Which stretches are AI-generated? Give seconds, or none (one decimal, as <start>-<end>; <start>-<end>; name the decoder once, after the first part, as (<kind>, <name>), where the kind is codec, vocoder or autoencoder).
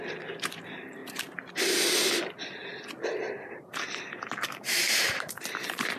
0.0-1.0 (vocoder, BigVGAN v2); 3.2-6.0